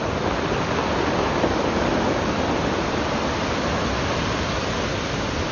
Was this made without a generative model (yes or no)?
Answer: yes